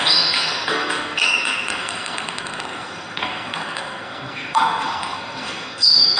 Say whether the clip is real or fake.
fake